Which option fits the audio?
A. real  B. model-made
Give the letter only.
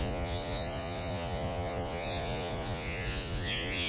B